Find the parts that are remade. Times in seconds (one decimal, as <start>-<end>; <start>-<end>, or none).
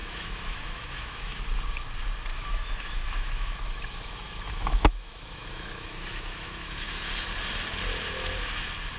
0.0-1.4; 2.3-7.0